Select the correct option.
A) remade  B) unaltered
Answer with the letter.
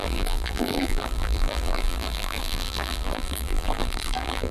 A